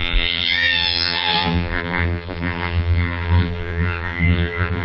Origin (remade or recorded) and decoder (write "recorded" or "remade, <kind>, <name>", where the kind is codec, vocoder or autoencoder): remade, vocoder, BigVGAN v2